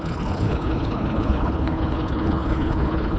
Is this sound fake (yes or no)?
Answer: yes